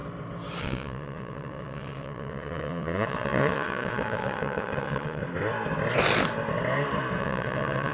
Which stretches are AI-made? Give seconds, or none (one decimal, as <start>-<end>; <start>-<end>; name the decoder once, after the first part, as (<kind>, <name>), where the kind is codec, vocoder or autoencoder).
0.6-5.2 (vocoder, WaveNeXt); 7.2-7.9